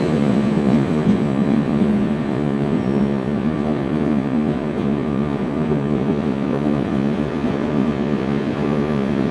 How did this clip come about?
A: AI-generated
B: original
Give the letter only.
A